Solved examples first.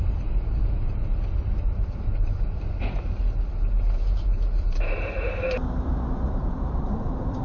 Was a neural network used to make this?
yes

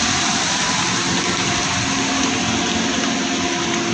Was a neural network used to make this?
no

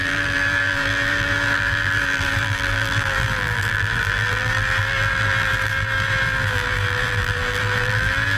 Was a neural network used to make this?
yes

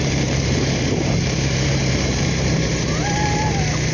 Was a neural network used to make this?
yes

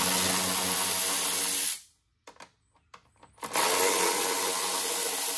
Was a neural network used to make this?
no